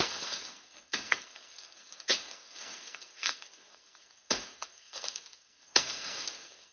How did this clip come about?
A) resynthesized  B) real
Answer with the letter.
A